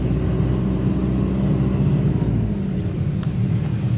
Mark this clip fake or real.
real